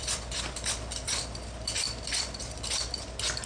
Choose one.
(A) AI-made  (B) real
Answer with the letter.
B